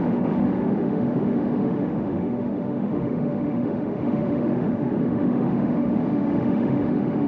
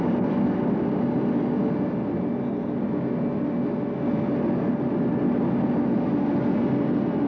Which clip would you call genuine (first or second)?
second